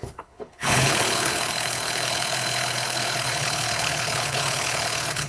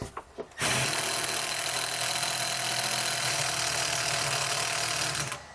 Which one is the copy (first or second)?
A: first